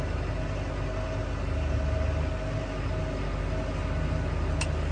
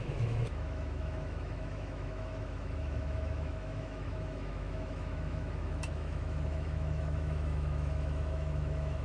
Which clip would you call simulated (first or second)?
second